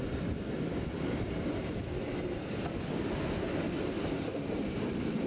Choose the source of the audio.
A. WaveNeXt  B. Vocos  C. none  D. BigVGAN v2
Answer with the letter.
C